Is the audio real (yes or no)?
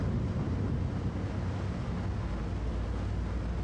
yes